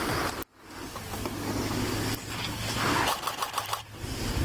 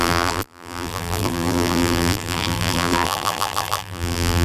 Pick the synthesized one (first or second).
second